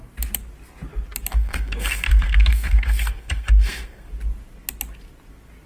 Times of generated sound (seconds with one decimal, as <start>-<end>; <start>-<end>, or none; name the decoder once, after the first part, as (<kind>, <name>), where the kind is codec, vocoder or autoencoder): 1.3-4.1 (codec, SNAC)

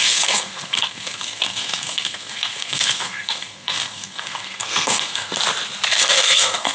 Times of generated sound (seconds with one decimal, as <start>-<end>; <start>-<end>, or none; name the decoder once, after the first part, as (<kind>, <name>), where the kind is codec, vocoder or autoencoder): 0.0-5.4 (codec, SNAC); 5.9-6.7

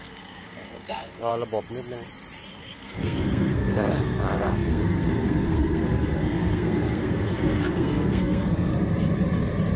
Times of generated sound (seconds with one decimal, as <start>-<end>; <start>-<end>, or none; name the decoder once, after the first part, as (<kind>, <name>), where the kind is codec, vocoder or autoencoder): 0.0-1.3 (codec, SNAC); 2.5-8.7